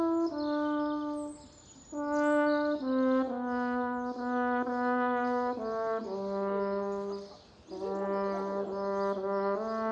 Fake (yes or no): no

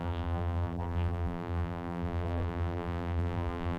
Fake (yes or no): yes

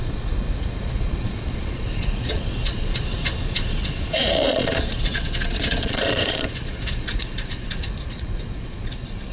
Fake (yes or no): yes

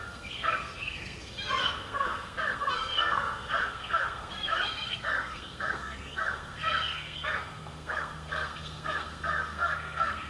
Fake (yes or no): yes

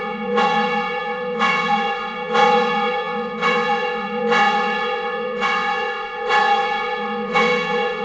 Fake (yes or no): yes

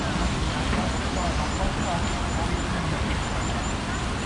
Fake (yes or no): no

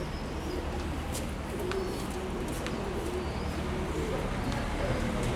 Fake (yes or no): no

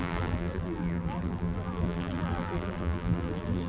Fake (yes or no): yes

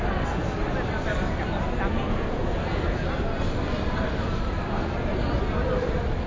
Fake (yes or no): no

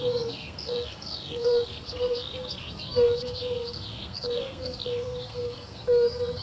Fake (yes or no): yes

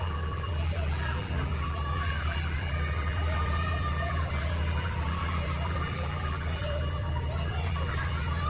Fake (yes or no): yes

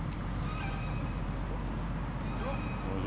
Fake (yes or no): no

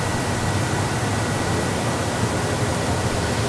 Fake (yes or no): no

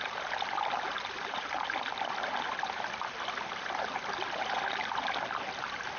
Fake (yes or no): no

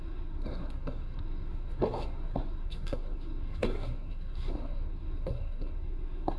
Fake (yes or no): yes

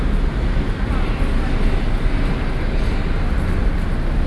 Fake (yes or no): no